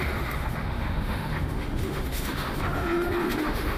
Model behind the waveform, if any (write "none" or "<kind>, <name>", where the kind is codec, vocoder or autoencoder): autoencoder, DAC-VAE